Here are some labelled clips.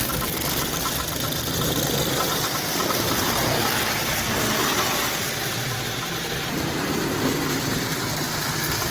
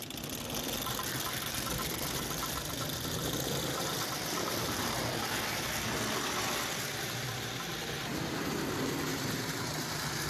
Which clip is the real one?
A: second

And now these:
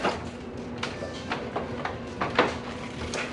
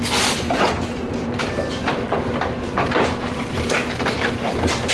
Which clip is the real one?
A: first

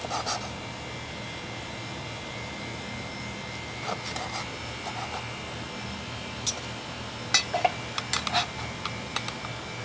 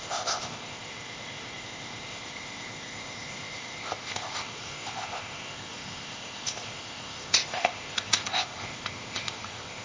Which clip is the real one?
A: first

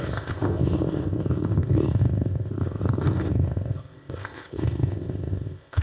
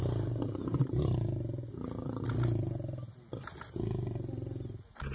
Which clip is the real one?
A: second